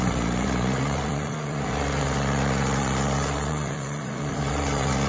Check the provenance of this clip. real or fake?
fake